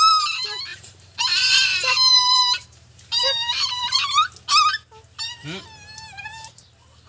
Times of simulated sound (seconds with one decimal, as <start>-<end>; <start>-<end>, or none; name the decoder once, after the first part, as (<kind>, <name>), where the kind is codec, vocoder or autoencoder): 0.7-3.8 (vocoder, BigVGAN v2)